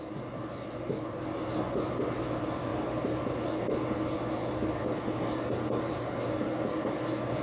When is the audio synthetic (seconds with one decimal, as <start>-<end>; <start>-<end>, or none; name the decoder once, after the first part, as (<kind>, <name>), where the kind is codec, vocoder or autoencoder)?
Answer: none